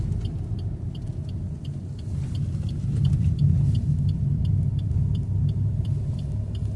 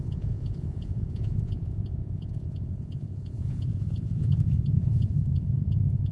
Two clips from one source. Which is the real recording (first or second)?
first